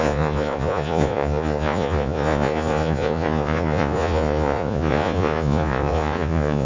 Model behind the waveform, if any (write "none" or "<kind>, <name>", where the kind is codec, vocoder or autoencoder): vocoder, Vocos